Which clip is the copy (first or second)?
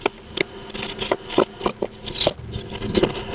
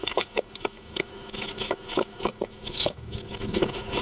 second